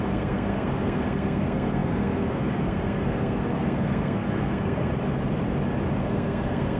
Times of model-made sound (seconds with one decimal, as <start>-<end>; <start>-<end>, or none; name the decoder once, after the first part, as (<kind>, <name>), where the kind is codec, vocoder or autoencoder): 0.0-4.9 (codec, SNAC); 6.0-6.8